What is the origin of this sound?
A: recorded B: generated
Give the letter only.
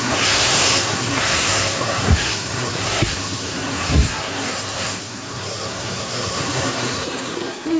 B